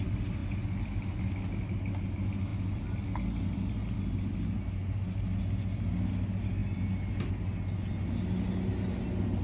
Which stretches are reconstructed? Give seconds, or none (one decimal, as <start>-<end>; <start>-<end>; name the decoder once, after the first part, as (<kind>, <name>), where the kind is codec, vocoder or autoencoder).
none